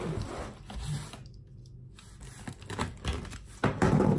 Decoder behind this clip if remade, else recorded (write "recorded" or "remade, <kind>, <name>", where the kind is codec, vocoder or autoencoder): recorded